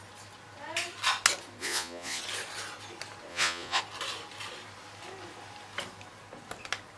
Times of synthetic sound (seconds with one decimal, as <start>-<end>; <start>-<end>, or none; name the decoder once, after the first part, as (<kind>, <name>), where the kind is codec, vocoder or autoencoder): 1.6-2.2 (vocoder, Vocos); 3.3-3.8